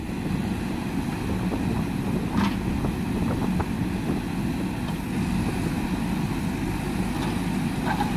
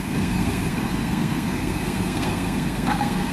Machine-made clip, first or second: second